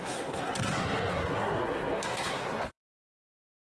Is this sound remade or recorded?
remade